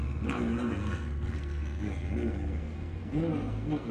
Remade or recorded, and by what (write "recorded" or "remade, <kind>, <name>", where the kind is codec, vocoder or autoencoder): remade, codec, SNAC